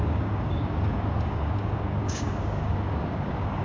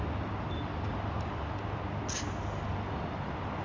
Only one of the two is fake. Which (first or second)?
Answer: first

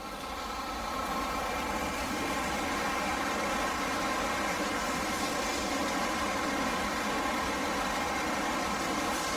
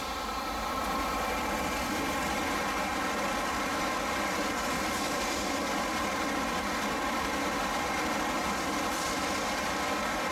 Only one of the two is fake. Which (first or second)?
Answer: first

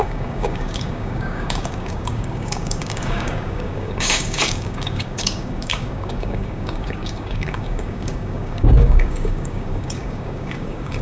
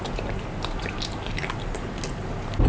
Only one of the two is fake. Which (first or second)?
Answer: first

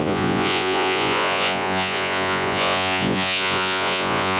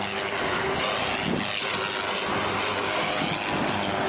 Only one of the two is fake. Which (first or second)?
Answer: first